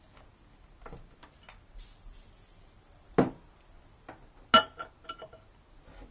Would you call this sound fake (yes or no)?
no